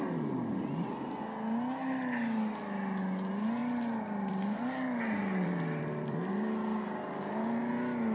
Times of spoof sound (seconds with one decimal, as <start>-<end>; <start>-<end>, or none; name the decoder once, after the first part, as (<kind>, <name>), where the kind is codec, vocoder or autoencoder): 3.6-6.3 (vocoder, BigVGAN v2)